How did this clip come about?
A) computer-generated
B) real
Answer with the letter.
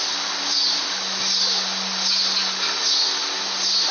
B